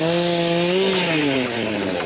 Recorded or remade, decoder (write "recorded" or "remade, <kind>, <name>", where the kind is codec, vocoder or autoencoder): recorded